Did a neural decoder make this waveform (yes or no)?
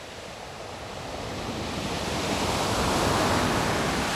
no